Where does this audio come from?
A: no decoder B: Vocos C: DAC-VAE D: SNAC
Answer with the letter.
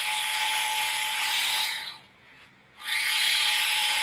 B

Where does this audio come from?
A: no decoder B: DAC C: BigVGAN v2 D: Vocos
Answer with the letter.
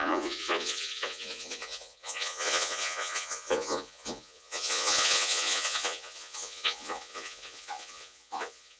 D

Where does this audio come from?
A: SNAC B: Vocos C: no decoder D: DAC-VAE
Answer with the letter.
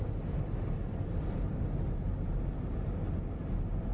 C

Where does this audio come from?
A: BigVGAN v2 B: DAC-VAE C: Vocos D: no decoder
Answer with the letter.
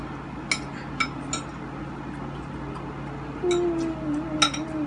D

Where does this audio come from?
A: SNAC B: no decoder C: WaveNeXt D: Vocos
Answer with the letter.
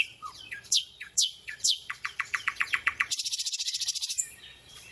D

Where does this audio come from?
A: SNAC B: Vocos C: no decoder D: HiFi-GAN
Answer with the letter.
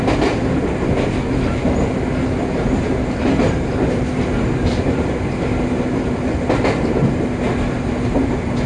C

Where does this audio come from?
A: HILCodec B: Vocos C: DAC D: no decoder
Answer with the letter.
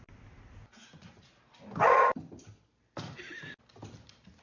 D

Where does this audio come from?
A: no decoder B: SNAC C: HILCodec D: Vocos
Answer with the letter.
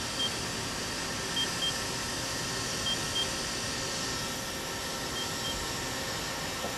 A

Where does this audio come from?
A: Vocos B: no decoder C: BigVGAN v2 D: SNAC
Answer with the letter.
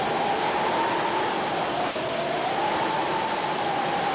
B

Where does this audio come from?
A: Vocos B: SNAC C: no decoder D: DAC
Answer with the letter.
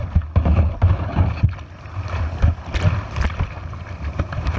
C